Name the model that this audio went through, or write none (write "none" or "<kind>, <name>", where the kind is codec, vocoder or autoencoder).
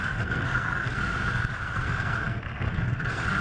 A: codec, SNAC